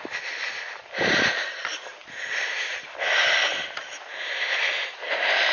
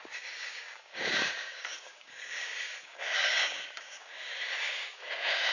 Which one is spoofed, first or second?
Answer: second